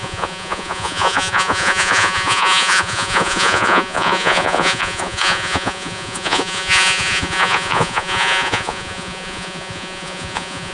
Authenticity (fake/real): fake